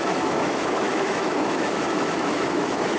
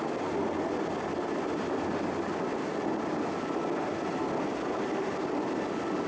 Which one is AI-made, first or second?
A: first